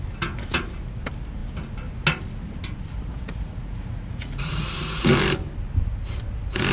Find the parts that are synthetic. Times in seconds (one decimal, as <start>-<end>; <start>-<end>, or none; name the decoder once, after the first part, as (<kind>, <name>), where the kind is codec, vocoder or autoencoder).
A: 3.1-5.1 (vocoder, Vocos)